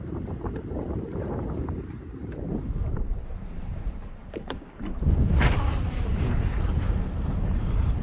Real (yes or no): no